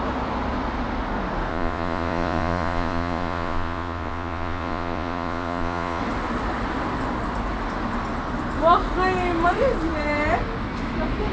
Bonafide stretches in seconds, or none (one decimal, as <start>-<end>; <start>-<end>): 0.0-1.5; 6.0-11.3